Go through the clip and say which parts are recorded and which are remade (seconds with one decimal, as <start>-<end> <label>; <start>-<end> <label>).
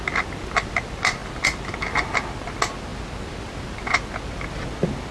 0.0-5.1 recorded